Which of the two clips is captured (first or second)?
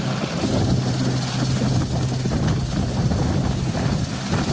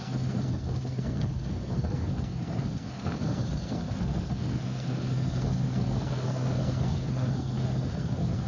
first